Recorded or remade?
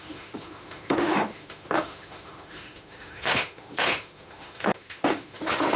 remade